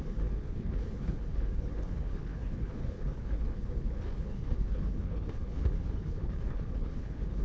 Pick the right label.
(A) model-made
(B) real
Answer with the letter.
A